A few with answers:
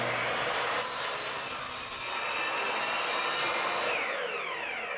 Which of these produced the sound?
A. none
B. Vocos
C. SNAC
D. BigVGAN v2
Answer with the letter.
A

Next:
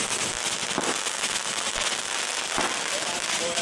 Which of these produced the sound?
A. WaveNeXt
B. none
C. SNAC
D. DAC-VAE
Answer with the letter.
B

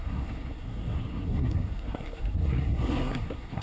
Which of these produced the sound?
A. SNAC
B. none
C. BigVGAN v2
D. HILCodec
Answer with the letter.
A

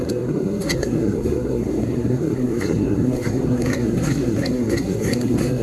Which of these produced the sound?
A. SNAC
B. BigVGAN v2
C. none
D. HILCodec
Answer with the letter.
A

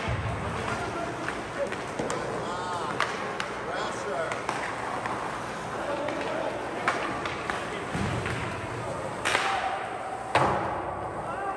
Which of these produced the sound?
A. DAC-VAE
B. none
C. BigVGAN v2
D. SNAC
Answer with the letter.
B